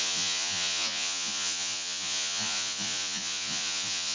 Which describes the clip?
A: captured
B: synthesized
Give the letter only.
B